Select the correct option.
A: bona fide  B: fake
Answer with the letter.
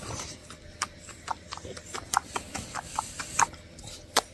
B